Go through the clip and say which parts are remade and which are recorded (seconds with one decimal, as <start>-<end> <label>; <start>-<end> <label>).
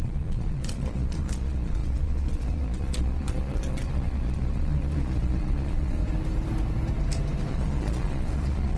0.0-6.0 remade; 6.0-7.5 recorded; 7.5-8.8 remade